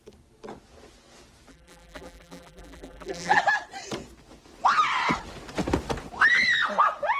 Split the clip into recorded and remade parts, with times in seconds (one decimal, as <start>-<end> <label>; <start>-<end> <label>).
0.0-1.5 recorded; 1.5-3.4 remade; 3.4-7.2 recorded